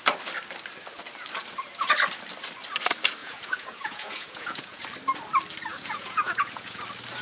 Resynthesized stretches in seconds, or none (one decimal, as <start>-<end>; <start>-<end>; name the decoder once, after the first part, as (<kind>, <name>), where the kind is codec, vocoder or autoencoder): 3.2-4.8 (vocoder, Vocos); 5.7-6.8